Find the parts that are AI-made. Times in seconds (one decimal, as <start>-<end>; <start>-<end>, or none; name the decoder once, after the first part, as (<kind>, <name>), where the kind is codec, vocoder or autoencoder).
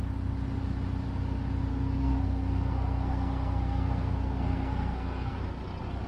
1.7-5.4 (codec, SNAC)